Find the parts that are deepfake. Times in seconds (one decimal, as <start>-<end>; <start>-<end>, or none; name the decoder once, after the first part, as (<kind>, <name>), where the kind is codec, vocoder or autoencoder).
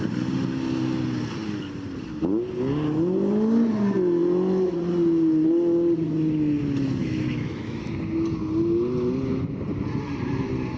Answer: 7.0-7.9 (autoencoder, DAC-VAE)